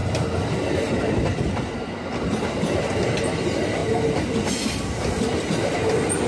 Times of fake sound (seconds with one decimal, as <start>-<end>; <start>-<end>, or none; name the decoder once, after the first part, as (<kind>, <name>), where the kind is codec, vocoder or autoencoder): none